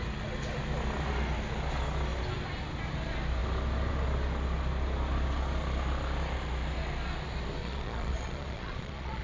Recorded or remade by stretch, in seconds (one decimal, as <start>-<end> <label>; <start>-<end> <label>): 0.0-7.6 recorded; 7.6-9.2 remade